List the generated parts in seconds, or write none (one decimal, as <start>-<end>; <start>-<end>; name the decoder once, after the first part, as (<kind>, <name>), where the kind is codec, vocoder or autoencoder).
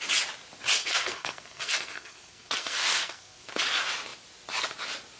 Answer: 0.8-3.6 (codec, SNAC)